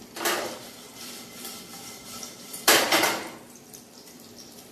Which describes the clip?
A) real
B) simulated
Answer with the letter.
B